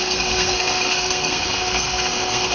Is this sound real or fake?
fake